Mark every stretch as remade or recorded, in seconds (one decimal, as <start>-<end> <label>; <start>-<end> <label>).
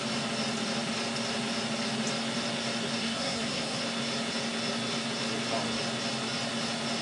0.0-3.0 recorded; 3.0-3.8 remade; 3.8-7.0 recorded